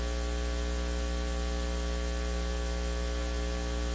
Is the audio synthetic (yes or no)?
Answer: no